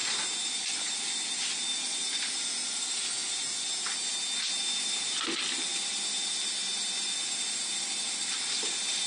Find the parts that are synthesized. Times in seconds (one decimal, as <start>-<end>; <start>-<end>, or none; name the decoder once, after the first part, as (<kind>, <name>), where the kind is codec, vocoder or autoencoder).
0.6-3.4 (vocoder, BigVGAN v2); 4.6-9.1